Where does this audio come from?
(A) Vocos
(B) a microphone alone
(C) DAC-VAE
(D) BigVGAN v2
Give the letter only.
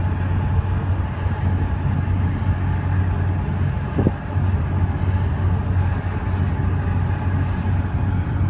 B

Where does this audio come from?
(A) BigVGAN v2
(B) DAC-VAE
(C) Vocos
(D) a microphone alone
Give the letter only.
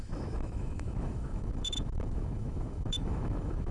B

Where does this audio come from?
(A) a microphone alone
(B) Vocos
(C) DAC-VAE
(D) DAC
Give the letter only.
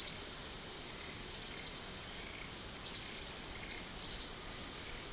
A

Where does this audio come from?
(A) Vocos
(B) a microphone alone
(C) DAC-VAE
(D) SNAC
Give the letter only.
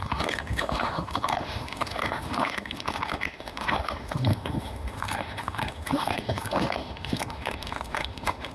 C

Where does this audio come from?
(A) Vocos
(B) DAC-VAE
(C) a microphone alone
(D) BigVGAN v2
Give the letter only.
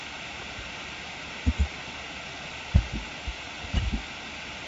C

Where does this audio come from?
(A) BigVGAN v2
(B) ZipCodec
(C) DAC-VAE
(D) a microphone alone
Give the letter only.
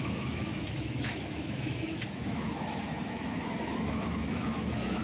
C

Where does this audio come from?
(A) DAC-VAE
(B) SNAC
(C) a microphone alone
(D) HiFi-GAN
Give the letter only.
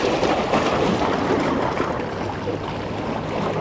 C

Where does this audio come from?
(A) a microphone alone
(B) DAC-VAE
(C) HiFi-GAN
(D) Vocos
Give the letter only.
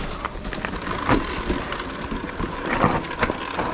A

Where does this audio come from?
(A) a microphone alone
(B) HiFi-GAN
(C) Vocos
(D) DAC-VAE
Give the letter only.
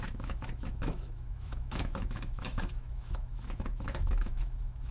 D